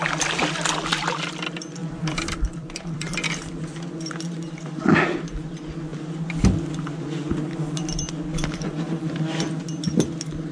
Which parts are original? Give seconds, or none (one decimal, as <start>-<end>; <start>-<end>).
0.0-1.8; 3.4-5.9; 6.4-10.5